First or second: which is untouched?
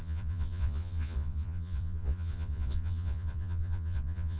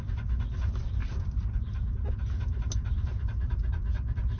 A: second